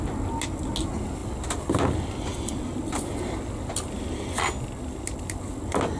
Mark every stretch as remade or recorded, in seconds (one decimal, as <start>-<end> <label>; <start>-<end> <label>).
0.0-6.0 recorded